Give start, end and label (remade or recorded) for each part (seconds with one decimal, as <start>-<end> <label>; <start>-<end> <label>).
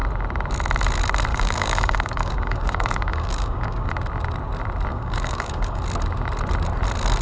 0.0-1.3 recorded; 1.3-3.9 remade; 3.9-4.9 recorded; 4.9-5.8 remade; 5.8-7.2 recorded